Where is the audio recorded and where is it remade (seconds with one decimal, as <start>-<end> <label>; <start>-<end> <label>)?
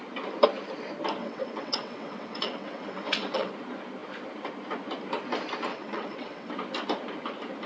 0.0-1.2 recorded; 1.2-3.5 remade; 3.5-5.7 recorded; 5.7-6.5 remade; 6.5-7.7 recorded